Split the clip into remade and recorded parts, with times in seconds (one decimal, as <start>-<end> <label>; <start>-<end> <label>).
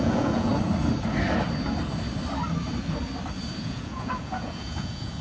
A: 0.0-0.5 remade; 0.5-3.6 recorded; 3.6-5.2 remade